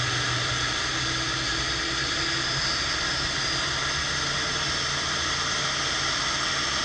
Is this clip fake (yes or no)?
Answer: no